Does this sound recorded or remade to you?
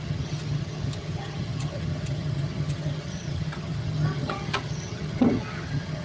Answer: remade